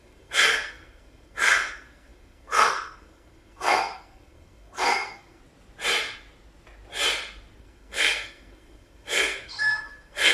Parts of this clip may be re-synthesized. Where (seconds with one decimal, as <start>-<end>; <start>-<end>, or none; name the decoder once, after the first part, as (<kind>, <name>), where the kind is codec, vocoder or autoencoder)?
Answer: 0.0-5.4 (codec, SNAC); 7.6-10.3